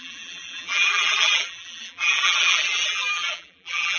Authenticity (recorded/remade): remade